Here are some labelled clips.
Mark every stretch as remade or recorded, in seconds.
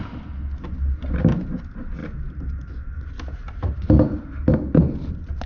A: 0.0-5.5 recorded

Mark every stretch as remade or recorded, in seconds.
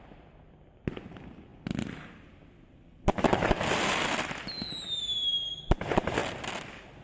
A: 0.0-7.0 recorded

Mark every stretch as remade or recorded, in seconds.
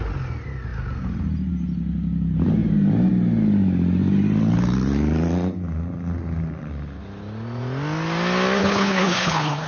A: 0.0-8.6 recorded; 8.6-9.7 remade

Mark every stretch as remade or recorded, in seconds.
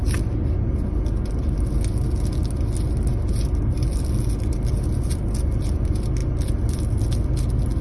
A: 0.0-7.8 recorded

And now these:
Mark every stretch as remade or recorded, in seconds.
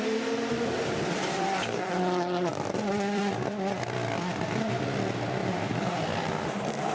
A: 0.0-2.5 recorded; 2.5-3.2 remade; 3.2-5.4 recorded; 5.4-6.3 remade; 6.3-6.9 recorded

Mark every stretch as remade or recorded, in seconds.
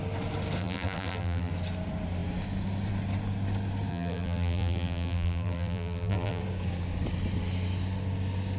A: 0.0-0.6 recorded; 0.6-1.5 remade; 1.5-3.9 recorded; 3.9-6.4 remade; 6.4-8.6 recorded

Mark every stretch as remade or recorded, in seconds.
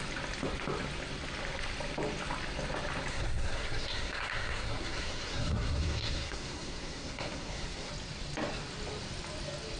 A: 0.0-3.1 recorded; 3.1-7.9 remade; 7.9-9.8 recorded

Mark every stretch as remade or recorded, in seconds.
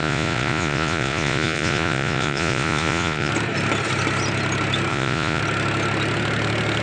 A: 0.0-3.3 remade; 3.3-4.9 recorded; 4.9-5.4 remade; 5.4-6.8 recorded